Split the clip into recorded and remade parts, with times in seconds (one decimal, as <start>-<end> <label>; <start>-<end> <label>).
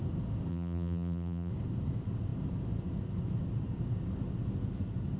0.0-0.5 recorded; 0.5-1.5 remade; 1.5-5.2 recorded